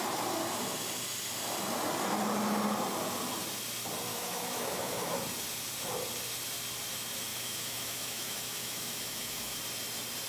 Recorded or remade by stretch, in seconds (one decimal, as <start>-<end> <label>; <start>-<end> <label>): 0.0-4.1 recorded; 4.1-5.1 remade; 5.1-7.3 recorded; 7.3-9.6 remade; 9.6-10.3 recorded